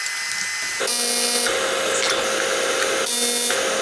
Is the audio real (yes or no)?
yes